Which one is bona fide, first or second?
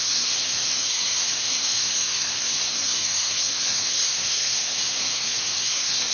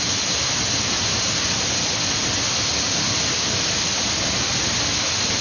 second